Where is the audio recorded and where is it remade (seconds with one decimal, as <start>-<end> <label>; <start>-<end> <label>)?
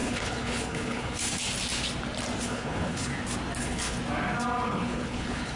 0.0-1.3 remade; 1.3-2.4 recorded; 2.4-3.1 remade; 3.1-3.6 recorded; 3.6-4.0 remade; 4.0-4.7 recorded; 4.7-5.6 remade